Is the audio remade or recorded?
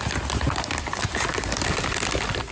recorded